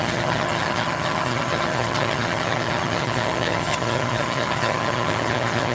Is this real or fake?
fake